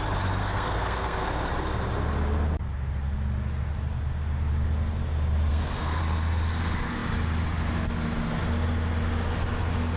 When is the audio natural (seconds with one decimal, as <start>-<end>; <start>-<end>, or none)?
0.0-0.4; 1.3-5.5; 6.0-10.0